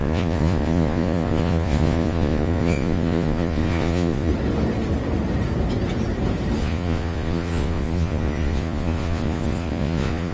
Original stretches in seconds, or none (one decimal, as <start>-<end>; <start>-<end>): 4.3-6.6